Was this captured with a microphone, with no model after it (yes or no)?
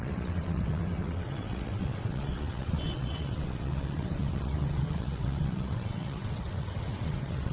no